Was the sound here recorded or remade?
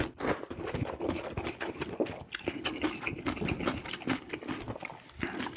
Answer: recorded